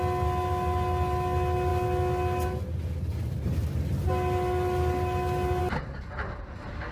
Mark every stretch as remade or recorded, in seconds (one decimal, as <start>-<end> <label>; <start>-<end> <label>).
0.0-6.9 recorded